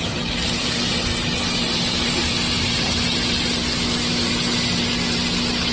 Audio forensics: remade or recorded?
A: recorded